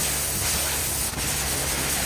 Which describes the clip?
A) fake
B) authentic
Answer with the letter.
B